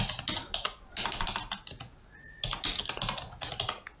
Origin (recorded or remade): recorded